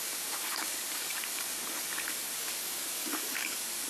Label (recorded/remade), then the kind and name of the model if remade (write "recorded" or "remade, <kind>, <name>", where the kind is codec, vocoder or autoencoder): remade, codec, DAC